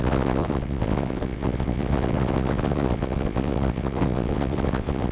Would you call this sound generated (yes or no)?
yes